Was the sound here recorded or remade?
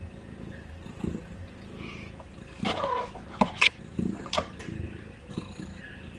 recorded